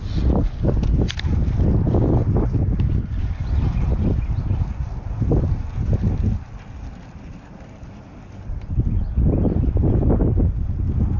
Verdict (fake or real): real